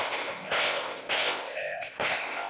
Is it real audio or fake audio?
fake